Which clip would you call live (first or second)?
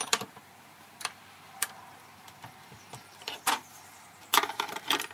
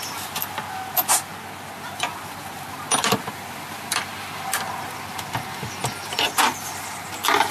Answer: second